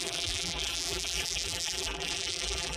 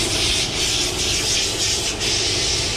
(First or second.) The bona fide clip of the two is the second